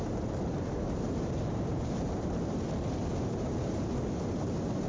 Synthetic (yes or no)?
yes